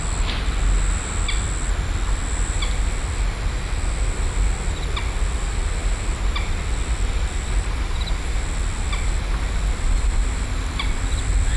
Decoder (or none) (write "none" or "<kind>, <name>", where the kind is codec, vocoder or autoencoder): none